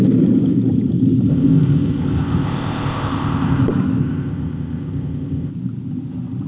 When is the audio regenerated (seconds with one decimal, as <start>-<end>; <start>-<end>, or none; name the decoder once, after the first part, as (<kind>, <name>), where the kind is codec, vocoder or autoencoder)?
1.3-3.6 (codec, ZipCodec); 4.0-5.5